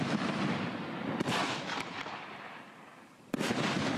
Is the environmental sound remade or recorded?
recorded